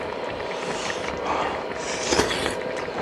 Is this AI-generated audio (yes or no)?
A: no